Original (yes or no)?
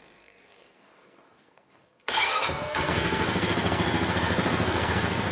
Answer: no